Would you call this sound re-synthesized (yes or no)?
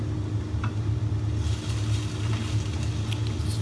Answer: no